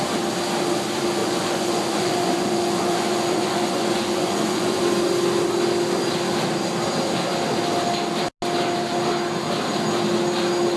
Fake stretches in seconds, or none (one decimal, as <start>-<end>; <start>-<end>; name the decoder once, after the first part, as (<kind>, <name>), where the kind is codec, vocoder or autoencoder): 1.2-4.8 (vocoder, Vocos)